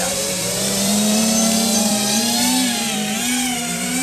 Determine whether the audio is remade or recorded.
remade